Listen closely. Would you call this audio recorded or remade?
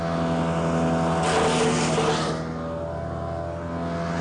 recorded